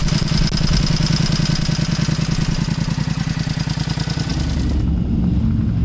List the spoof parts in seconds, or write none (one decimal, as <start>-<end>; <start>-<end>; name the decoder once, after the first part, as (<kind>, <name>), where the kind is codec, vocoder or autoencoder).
none